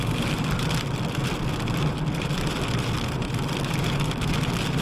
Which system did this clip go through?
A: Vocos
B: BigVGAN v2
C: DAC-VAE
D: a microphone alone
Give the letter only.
D